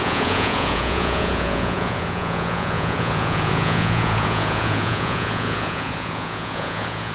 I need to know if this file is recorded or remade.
remade